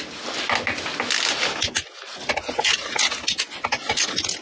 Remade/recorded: recorded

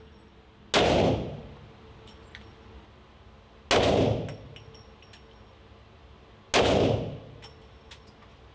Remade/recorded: recorded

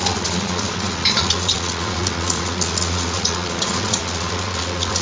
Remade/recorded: remade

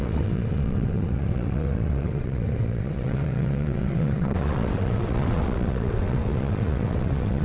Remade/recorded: remade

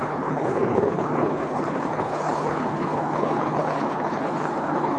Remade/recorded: remade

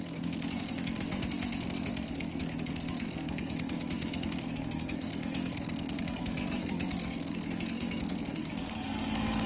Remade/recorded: remade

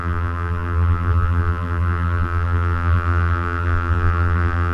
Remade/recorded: remade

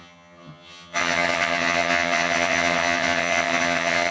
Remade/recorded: remade